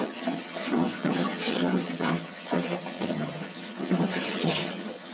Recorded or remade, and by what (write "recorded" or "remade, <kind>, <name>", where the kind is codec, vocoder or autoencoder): remade, vocoder, HiFi-GAN